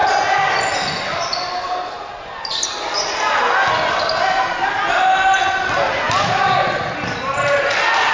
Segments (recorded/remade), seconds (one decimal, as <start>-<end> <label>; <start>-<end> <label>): 0.0-8.1 recorded